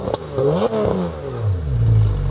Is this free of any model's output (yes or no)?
yes